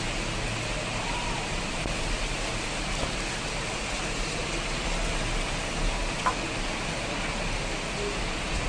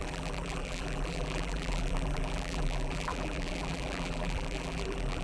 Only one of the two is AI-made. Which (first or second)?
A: second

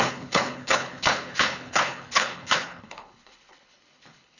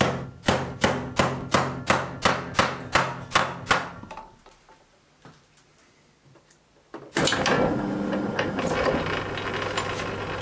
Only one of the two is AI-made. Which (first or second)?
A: first